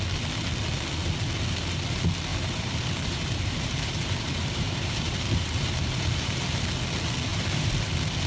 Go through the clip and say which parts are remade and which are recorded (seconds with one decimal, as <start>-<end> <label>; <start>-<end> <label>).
0.0-2.3 recorded; 2.3-6.7 remade; 6.7-7.3 recorded; 7.3-7.9 remade; 7.9-8.3 recorded